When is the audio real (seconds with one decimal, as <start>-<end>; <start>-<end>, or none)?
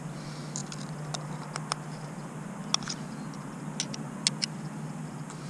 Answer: 0.0-5.5